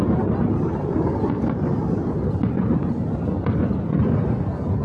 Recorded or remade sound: recorded